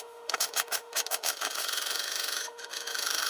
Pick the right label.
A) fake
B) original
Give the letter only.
A